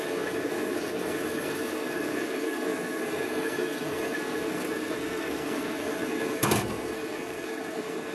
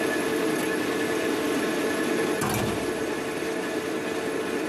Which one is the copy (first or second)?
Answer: first